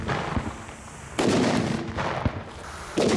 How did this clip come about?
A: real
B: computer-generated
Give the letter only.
A